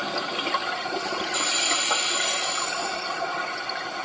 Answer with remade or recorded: recorded